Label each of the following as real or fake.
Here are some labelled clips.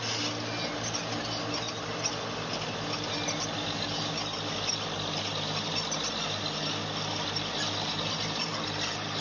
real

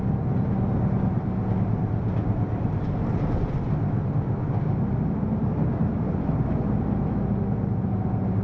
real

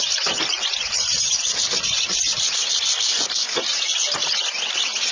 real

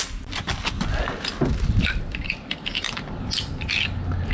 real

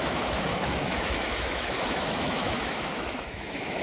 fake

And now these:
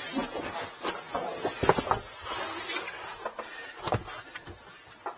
real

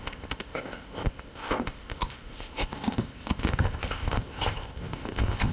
fake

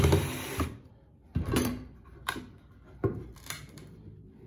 fake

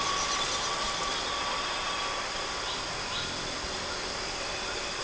real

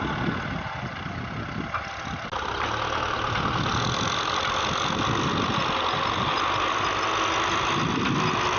real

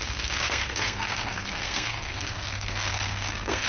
fake